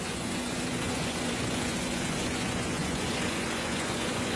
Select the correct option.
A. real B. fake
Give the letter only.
B